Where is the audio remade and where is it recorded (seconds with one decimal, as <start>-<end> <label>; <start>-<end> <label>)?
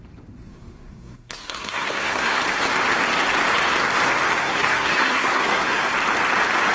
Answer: 0.0-0.5 recorded; 0.5-2.4 remade; 2.4-4.4 recorded; 4.4-5.9 remade; 5.9-6.7 recorded